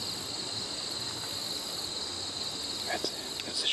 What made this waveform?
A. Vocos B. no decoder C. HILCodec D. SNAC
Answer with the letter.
B